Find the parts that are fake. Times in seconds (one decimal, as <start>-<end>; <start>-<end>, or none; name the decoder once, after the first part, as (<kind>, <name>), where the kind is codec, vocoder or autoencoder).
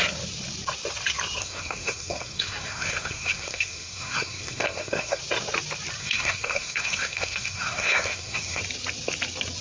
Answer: 1.4-5.2 (codec, SNAC); 6.0-8.6